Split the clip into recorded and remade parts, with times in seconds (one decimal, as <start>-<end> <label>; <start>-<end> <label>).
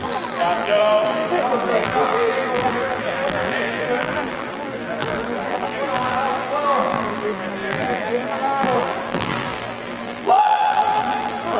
0.0-11.6 remade